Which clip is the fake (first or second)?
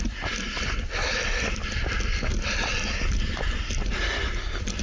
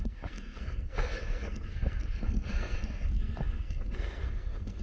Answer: second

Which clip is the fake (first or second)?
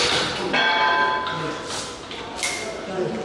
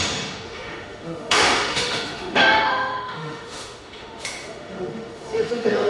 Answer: second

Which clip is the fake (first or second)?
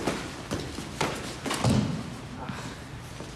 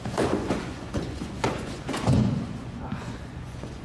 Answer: second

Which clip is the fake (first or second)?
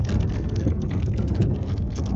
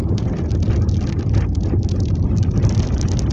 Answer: first